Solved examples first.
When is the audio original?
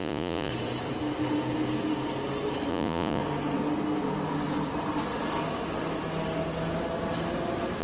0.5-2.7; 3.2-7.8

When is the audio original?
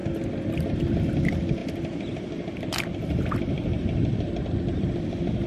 0.0-5.5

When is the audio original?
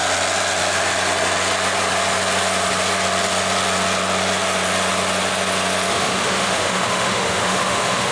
0.0-5.9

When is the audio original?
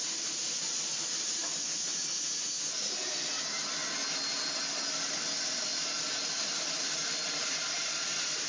1.4-6.4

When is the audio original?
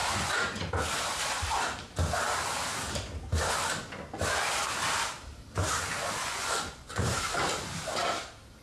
0.7-6.2; 7.2-8.6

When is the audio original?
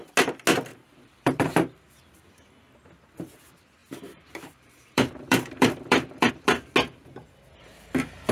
0.0-0.7; 2.5-3.8; 6.3-8.3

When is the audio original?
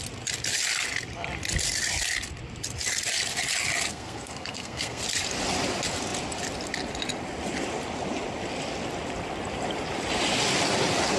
0.0-3.9; 5.0-11.2